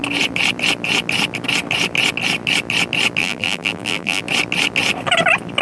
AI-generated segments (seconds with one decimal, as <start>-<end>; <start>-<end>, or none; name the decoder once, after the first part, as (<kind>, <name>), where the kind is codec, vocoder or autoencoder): 3.2-4.2 (vocoder, BigVGAN v2)